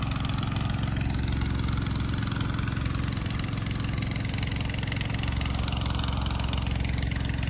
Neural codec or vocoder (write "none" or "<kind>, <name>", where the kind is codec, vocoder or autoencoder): none